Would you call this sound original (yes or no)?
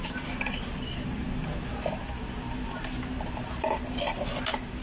yes